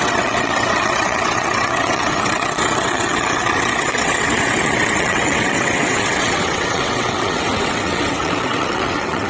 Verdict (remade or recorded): remade